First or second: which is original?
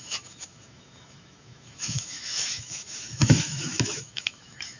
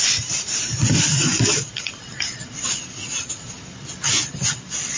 second